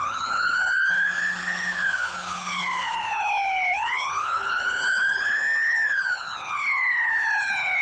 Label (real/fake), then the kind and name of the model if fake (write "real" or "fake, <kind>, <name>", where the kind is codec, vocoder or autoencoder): fake, codec, HILCodec